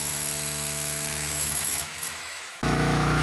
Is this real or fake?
fake